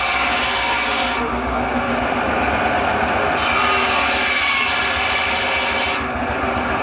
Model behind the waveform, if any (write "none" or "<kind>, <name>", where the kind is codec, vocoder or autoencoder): none